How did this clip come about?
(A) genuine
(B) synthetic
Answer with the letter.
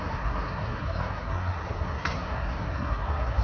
B